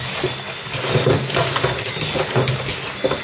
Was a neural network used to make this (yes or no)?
no